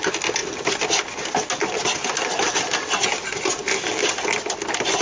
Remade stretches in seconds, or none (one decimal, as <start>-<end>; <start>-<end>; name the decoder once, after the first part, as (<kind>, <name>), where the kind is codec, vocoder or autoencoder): none